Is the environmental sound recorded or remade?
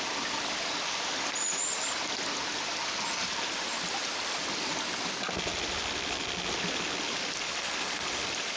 recorded